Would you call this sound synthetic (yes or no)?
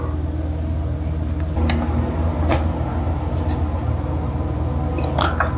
no